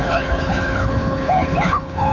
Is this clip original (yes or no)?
no